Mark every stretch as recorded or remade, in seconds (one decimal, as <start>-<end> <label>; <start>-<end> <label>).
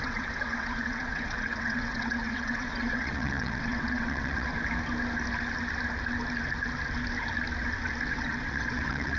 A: 0.0-4.5 remade; 4.5-8.1 recorded; 8.1-9.2 remade